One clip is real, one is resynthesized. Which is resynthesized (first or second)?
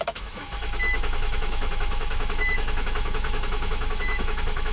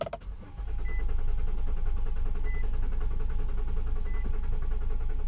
first